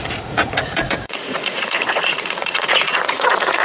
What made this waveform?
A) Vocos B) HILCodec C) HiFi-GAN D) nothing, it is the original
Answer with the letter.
A